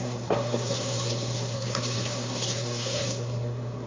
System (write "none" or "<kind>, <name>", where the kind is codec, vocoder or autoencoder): codec, SNAC